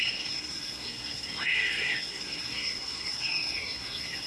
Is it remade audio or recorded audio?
remade